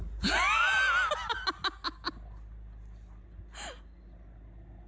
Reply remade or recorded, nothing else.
recorded